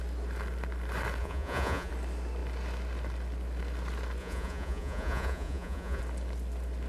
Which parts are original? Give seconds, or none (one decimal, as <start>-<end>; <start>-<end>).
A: 0.0-1.2; 1.9-4.2; 6.0-6.9